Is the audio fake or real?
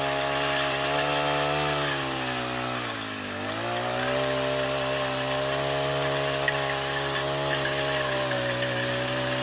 real